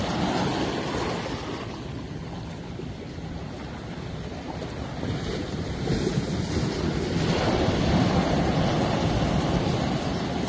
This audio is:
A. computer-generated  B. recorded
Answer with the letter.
B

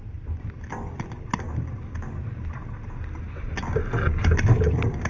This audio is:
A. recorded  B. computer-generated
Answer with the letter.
A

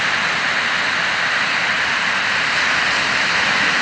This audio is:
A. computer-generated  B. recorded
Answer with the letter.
B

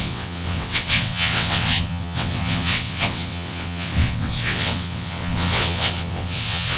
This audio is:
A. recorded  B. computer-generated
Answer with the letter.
B